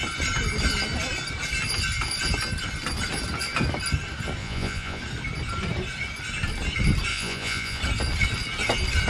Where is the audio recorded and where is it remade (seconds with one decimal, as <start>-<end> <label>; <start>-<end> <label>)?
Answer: 0.0-4.4 recorded; 4.4-5.0 remade; 5.0-7.1 recorded; 7.1-7.8 remade; 7.8-9.1 recorded